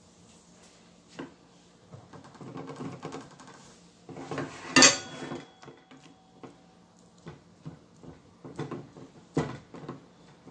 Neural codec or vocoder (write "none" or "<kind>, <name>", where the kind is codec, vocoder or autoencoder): none